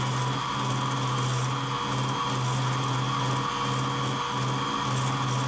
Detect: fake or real real